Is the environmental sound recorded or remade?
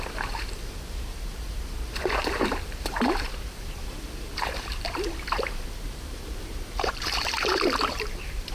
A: remade